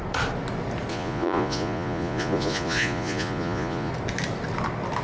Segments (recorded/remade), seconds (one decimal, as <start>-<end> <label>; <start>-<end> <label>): 0.0-0.9 recorded; 0.9-3.9 remade; 3.9-5.0 recorded